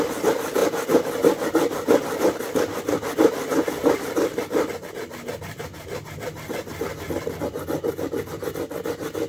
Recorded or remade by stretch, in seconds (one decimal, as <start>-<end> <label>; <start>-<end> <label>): 0.0-9.3 recorded